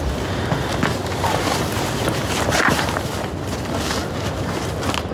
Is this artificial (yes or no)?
no